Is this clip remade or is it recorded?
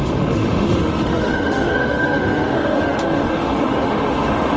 remade